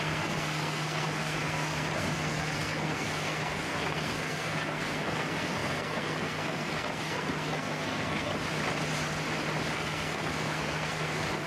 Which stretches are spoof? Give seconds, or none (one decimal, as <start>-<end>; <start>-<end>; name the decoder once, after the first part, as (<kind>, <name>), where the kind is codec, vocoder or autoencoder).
0.0-8.3 (codec, SNAC); 9.7-11.5